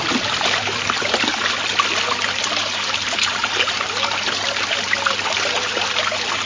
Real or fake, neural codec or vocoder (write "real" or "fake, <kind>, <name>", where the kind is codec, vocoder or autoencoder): real